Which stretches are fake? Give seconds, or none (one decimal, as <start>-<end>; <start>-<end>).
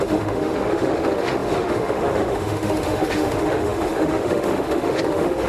0.0-5.5